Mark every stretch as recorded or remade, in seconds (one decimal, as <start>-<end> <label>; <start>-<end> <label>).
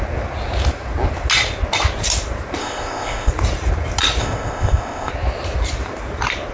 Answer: 0.0-2.6 recorded; 2.6-3.3 remade; 3.3-4.2 recorded; 4.2-5.1 remade; 5.1-6.5 recorded